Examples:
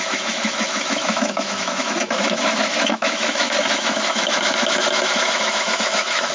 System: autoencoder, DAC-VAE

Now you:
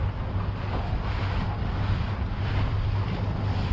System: none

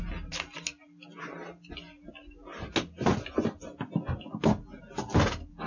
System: none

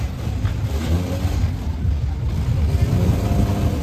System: none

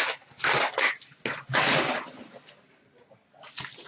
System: none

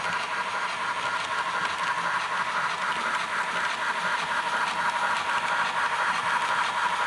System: none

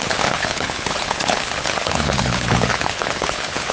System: codec, HILCodec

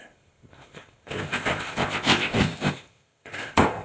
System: codec, ZipCodec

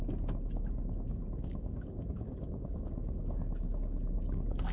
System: codec, DAC